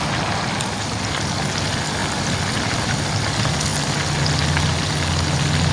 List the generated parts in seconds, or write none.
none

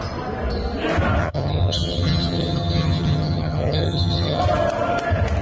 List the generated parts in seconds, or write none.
1.2-4.4 (vocoder, HiFi-GAN)

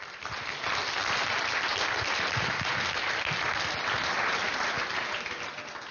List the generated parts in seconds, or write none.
none

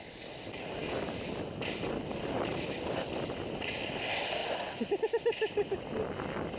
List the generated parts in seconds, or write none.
2.5-3.4 (vocoder, BigVGAN v2); 4.4-5.7

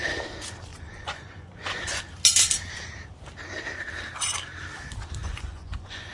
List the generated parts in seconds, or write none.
0.7-2.0 (vocoder, Vocos); 5.2-6.1

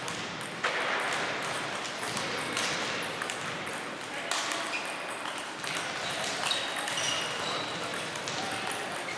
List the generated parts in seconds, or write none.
none